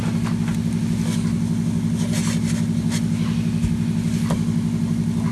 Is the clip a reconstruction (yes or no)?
no